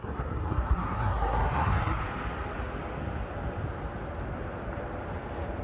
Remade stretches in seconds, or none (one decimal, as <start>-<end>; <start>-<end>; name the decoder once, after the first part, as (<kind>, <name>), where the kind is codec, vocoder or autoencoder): 0.0-2.0 (codec, SNAC)